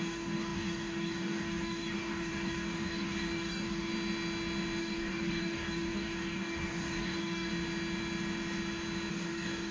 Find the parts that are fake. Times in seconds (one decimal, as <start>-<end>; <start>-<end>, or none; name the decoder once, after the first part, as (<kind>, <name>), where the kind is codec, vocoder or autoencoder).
0.0-3.9 (codec, DAC); 4.8-7.5; 9.1-9.7